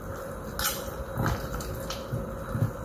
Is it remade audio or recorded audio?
recorded